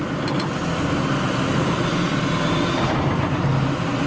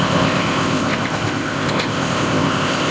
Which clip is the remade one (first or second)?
second